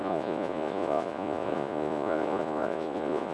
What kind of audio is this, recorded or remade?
remade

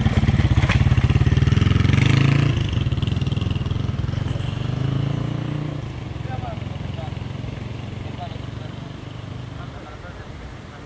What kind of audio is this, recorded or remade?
recorded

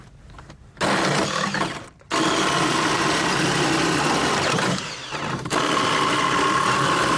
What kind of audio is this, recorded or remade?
remade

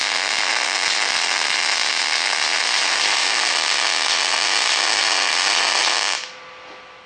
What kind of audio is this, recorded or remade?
recorded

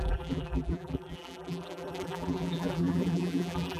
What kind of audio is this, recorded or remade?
remade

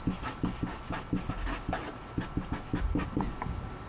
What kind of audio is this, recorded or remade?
recorded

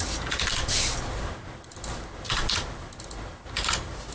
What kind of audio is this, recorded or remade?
recorded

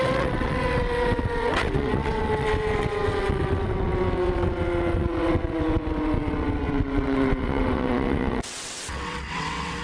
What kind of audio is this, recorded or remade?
remade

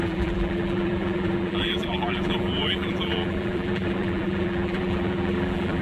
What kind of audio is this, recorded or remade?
remade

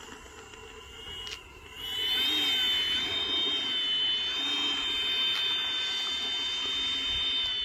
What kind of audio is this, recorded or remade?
recorded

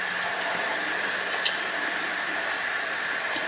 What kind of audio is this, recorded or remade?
recorded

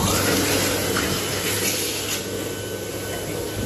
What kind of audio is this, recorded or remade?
recorded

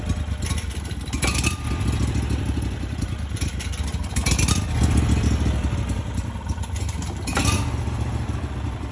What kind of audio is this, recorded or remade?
recorded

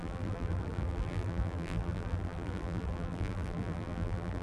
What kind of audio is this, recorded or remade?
remade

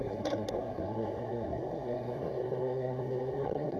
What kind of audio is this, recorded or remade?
remade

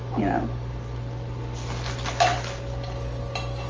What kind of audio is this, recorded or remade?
recorded